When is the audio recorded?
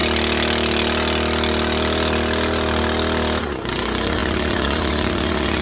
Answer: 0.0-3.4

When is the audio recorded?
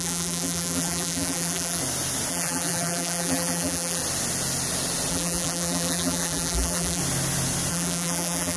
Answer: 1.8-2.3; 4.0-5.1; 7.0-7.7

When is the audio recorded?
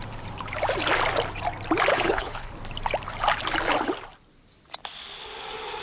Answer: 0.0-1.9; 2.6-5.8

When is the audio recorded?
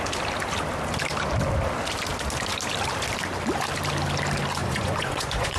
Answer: 0.0-4.6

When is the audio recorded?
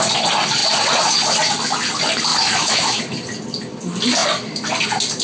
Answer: 0.0-2.3; 3.0-5.2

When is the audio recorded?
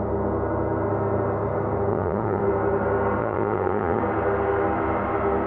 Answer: 0.0-1.9; 2.4-3.2; 4.0-5.5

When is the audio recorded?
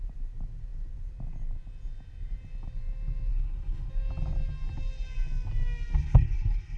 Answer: 0.0-3.3; 3.9-6.0